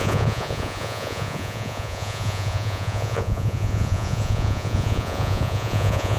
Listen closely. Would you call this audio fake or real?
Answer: fake